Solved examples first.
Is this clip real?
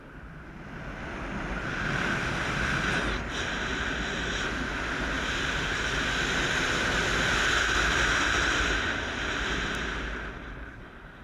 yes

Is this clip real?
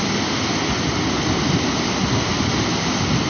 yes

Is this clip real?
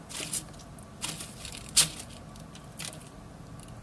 yes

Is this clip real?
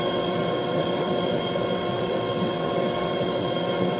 no